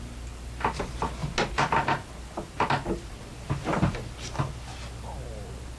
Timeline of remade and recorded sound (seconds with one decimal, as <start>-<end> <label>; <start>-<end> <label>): 0.0-5.8 recorded